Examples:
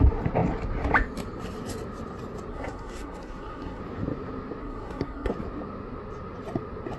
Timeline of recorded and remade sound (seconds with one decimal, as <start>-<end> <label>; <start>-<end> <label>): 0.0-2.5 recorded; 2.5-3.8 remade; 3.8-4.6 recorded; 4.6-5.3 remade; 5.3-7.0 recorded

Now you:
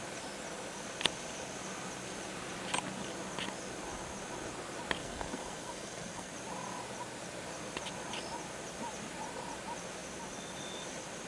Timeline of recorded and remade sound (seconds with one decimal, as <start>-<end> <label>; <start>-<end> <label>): 0.0-5.0 recorded; 5.0-6.3 remade; 6.3-11.3 recorded

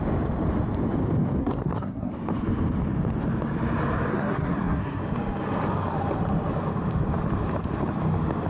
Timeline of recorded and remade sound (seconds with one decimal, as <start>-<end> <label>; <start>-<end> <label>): 0.0-1.4 recorded; 1.4-2.1 remade; 2.1-4.1 recorded; 4.1-5.0 remade; 5.0-8.5 recorded

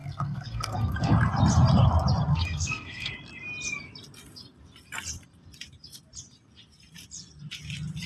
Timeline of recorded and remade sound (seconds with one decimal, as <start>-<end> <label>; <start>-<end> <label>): 0.0-1.1 remade; 1.1-2.3 recorded; 2.3-3.1 remade; 3.1-8.1 recorded

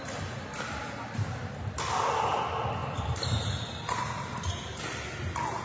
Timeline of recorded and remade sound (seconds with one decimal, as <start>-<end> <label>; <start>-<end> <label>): 0.0-5.6 recorded

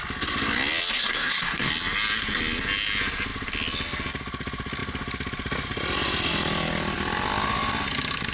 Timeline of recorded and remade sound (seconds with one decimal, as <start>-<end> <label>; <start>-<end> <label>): 0.0-0.9 recorded; 0.9-1.7 remade; 1.7-8.3 recorded